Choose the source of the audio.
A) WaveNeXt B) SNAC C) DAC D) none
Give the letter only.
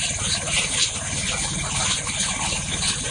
D